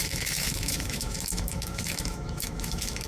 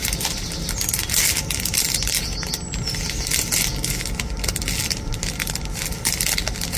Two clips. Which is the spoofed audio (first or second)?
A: first